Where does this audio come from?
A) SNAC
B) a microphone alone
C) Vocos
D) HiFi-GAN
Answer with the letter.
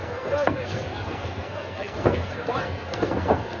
A